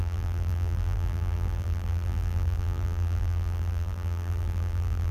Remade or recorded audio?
remade